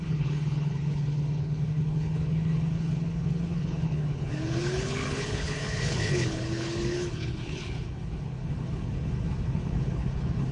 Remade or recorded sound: remade